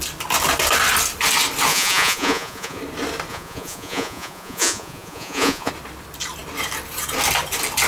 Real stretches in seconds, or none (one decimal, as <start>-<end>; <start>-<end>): 0.0-1.7; 2.8-3.3; 5.7-7.9